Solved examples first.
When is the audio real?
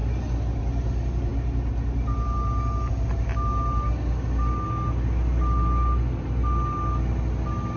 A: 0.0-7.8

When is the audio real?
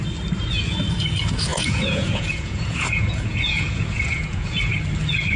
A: 0.0-1.5; 4.7-5.4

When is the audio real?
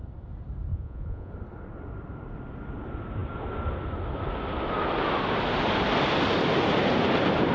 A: 0.0-0.7; 1.3-7.5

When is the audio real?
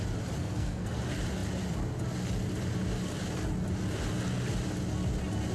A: 0.0-0.4; 1.0-5.5